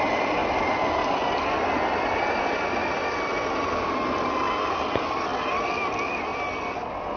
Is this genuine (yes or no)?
yes